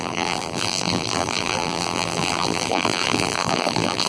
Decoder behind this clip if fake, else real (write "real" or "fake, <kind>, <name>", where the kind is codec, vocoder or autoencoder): fake, vocoder, BigVGAN v2